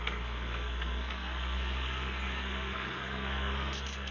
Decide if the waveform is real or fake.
fake